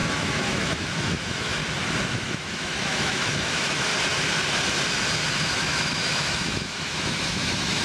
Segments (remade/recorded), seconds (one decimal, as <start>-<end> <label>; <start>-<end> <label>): 0.0-1.6 remade; 1.6-2.1 recorded; 2.1-3.9 remade; 3.9-5.3 recorded; 5.3-7.8 remade